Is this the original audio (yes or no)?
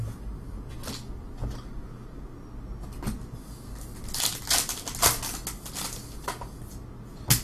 yes